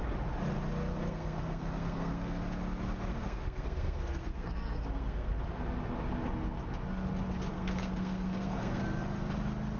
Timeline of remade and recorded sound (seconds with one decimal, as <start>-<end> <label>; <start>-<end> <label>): 0.0-0.9 recorded; 0.9-2.4 remade; 2.4-3.1 recorded; 3.1-5.3 remade; 5.3-7.5 recorded; 7.5-8.8 remade; 8.8-9.8 recorded